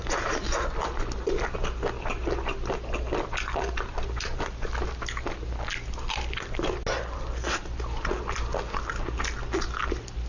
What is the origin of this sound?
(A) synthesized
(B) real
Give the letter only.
B